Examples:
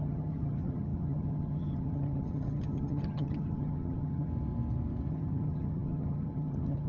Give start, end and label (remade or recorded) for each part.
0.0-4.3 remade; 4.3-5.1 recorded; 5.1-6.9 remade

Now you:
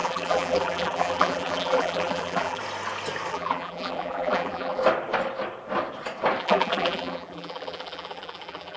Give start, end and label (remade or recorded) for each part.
0.0-2.6 remade; 2.6-3.3 recorded; 3.3-4.8 remade; 4.8-6.4 recorded; 6.4-8.8 remade

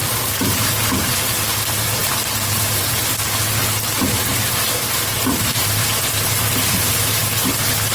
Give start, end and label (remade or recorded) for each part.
0.0-7.2 remade; 7.2-7.9 recorded

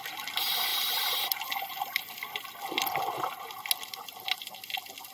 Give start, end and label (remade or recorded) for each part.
0.0-5.1 recorded